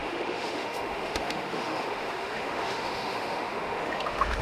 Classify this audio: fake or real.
fake